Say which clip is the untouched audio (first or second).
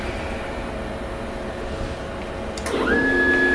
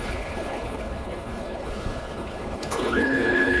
first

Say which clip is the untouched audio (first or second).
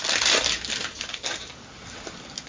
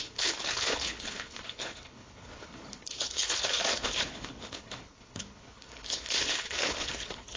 first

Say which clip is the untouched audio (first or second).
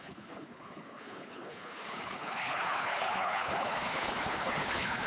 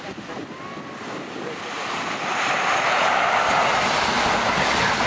second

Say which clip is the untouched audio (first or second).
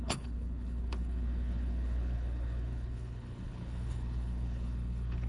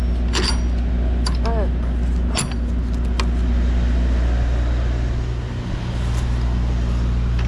second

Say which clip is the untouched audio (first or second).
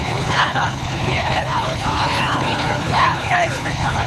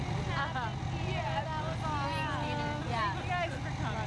second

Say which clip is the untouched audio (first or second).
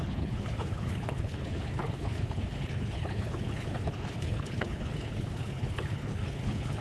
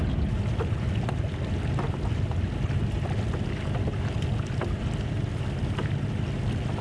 second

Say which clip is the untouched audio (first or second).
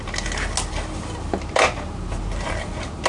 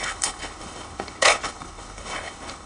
first